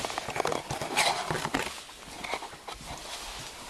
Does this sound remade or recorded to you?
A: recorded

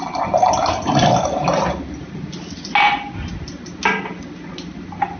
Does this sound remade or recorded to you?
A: recorded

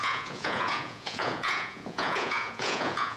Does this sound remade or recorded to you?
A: remade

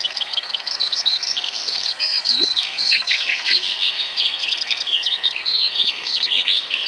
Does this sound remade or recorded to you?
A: remade